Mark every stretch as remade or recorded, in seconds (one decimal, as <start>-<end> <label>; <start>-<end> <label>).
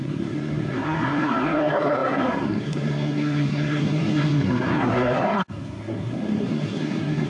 0.0-7.3 remade